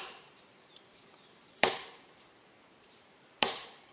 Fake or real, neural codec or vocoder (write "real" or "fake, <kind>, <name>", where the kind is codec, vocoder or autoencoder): fake, vocoder, BigVGAN v2